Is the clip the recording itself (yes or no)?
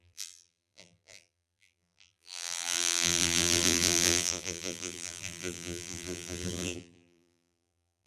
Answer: no